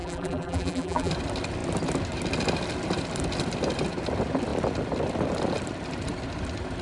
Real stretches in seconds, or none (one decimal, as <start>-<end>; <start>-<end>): 1.1-6.8